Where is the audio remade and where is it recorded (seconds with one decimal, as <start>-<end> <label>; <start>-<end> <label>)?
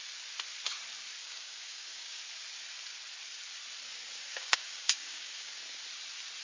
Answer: 0.0-1.2 recorded; 1.2-2.2 remade; 2.2-4.3 recorded; 4.3-5.5 remade; 5.5-6.4 recorded